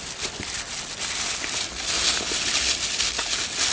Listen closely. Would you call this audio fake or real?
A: real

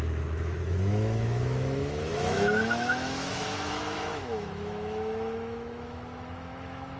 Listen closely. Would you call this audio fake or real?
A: fake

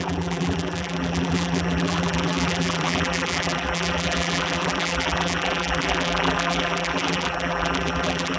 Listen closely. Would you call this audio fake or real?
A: fake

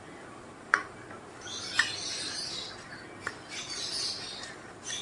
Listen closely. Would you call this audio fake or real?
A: real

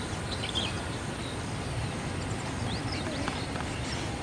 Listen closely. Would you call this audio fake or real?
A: real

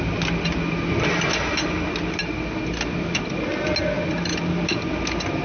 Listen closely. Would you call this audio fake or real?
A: real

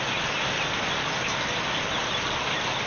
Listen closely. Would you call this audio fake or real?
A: real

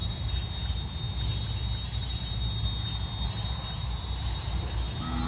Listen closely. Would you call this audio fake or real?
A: real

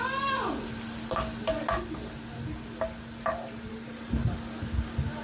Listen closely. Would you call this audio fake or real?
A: real